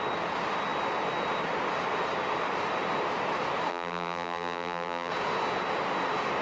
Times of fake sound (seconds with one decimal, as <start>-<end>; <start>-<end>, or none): 3.7-5.1